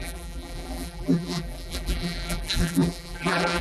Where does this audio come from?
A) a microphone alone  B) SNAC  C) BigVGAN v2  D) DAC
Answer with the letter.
C